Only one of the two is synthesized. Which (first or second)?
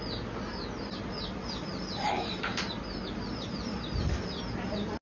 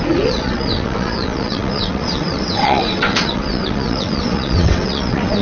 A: second